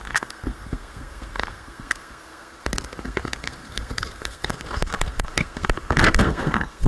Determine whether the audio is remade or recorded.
remade